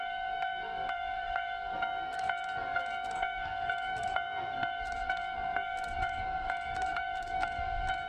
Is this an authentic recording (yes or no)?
no